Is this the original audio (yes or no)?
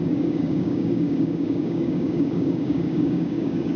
no